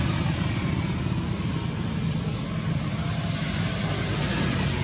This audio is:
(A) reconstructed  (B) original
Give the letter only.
B